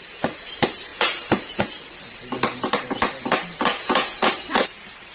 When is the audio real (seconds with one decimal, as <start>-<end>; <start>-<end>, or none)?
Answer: 0.0-0.9; 1.6-3.7; 4.3-5.1

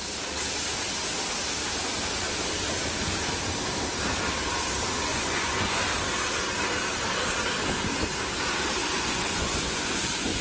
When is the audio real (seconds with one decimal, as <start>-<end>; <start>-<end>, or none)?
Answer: 0.0-5.1; 5.8-8.8

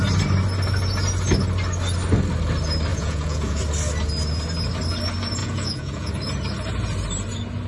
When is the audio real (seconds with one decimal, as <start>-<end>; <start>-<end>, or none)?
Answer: 0.0-2.9; 3.6-5.4; 6.1-7.7

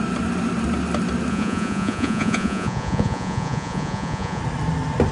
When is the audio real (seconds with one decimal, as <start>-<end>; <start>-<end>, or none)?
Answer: 0.0-1.3; 4.4-5.1

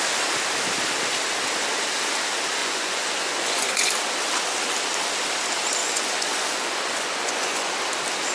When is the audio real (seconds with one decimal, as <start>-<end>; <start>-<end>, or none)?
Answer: 0.0-2.6; 3.9-5.8; 7.7-8.3

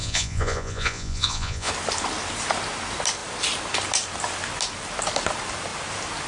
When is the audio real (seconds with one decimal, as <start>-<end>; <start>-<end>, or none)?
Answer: 1.7-6.3

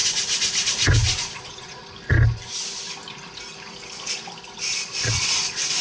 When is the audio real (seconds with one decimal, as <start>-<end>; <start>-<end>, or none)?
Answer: 0.0-1.2; 1.8-4.9